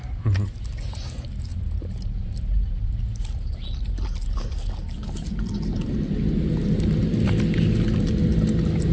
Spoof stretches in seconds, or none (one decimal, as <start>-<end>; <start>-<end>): 1.5-3.0; 6.6-7.3